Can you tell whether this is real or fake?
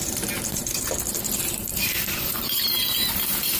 fake